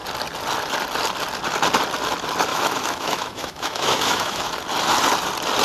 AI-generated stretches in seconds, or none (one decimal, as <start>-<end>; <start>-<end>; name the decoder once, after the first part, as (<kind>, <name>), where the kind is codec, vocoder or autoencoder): 2.5-4.5 (autoencoder, DAC-VAE)

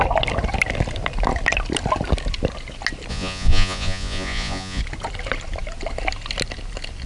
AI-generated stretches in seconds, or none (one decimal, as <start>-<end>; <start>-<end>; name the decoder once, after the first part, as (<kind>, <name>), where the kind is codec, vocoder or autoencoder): 3.1-4.8 (vocoder, Vocos)

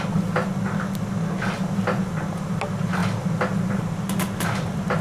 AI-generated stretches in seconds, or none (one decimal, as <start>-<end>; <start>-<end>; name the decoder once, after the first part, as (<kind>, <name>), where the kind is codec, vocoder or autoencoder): none

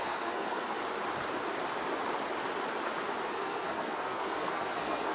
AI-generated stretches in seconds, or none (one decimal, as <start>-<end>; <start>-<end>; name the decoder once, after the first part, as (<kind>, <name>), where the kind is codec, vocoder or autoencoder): 0.0-0.8 (codec, SNAC); 3.3-5.1

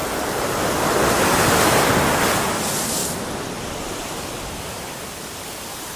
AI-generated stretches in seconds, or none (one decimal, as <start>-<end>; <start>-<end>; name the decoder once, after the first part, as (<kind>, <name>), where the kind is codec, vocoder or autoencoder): none

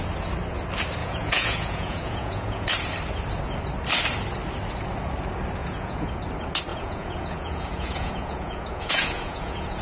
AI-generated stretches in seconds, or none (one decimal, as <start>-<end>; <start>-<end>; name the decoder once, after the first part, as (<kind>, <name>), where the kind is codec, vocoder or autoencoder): 1.0-2.7 (vocoder, Vocos); 5.6-6.1; 6.7-9.8

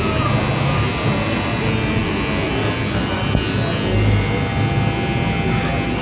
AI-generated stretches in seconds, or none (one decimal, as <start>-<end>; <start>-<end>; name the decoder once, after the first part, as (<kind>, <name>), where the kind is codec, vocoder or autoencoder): none

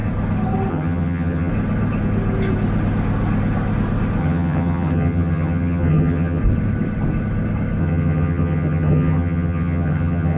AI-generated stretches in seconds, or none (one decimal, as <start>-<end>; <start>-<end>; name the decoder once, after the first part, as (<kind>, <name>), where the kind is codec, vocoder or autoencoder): 0.7-1.5 (vocoder, HiFi-GAN); 4.2-6.4; 7.8-10.4